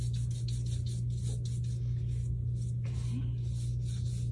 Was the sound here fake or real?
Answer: real